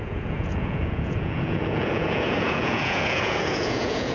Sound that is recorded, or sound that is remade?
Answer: remade